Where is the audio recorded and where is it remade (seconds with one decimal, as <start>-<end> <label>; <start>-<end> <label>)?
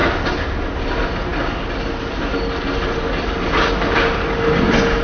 0.0-5.0 recorded